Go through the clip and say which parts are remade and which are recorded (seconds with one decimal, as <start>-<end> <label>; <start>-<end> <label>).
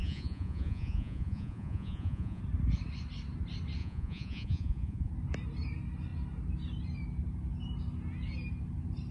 0.0-2.4 remade; 2.4-3.8 recorded; 3.8-5.1 remade; 5.1-9.1 recorded